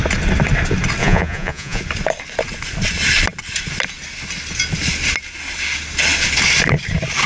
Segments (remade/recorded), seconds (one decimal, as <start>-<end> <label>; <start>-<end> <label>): 0.0-1.0 recorded; 1.0-1.8 remade; 1.8-7.3 recorded